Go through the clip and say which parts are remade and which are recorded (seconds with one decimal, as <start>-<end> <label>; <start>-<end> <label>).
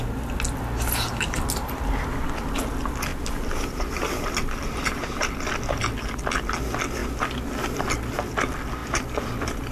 0.0-3.1 recorded; 3.1-5.0 remade; 5.0-8.8 recorded; 8.8-9.7 remade